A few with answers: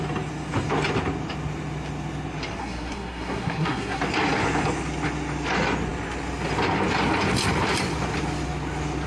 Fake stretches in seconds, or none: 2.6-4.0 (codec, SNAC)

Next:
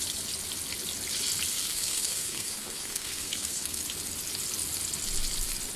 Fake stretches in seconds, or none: 1.5-3.8 (codec, SNAC)

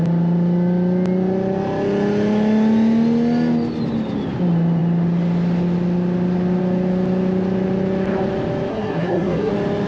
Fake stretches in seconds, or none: 8.7-9.5 (codec, SNAC)